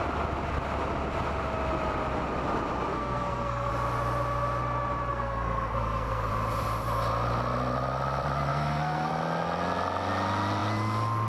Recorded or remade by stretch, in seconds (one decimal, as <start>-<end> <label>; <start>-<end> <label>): 0.0-2.9 recorded; 2.9-3.7 remade; 3.7-5.1 recorded; 5.1-6.3 remade; 6.3-8.5 recorded; 8.5-9.1 remade; 9.1-11.3 recorded